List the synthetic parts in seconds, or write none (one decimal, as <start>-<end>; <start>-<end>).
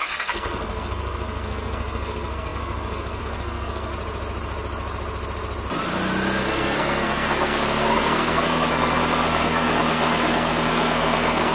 0.0-3.9; 6.4-11.5